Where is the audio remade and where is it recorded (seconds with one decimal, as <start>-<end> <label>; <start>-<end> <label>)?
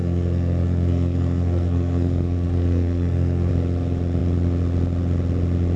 0.0-3.5 remade; 3.5-5.8 recorded